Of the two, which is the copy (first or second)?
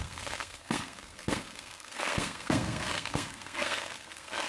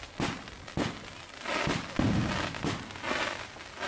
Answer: first